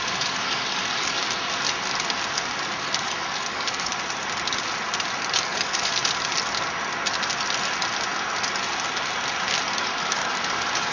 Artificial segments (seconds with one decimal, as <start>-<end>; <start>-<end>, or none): 0.0-1.2; 2.8-3.9; 5.5-5.9; 9.8-10.9